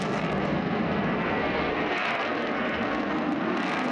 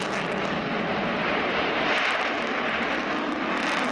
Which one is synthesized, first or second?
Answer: first